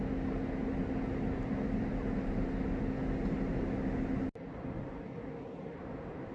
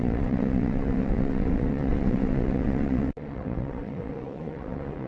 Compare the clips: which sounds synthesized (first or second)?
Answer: second